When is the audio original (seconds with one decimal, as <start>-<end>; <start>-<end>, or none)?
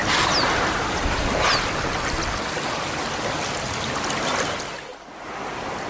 0.0-5.9